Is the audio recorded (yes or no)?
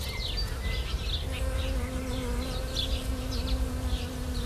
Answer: yes